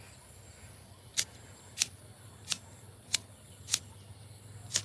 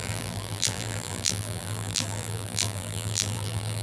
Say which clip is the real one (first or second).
first